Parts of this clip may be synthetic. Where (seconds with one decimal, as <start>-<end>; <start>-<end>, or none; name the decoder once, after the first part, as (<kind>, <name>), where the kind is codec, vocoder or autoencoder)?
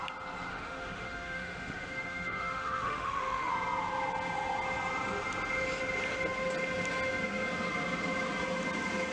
0.5-3.5 (autoencoder, DAC-VAE)